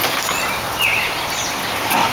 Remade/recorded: recorded